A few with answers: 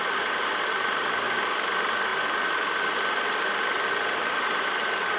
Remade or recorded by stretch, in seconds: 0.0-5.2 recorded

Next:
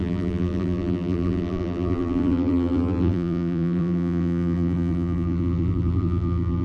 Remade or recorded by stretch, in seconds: 0.0-6.6 remade

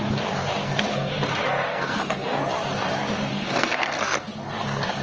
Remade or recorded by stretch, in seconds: 0.0-0.6 recorded; 0.6-1.1 remade; 1.1-1.7 recorded; 1.7-2.4 remade; 2.4-3.3 recorded; 3.3-4.3 remade; 4.3-5.0 recorded

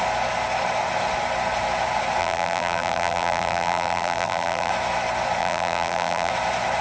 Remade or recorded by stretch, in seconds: 0.0-2.2 recorded; 2.2-4.7 remade; 4.7-5.4 recorded; 5.4-6.3 remade; 6.3-6.8 recorded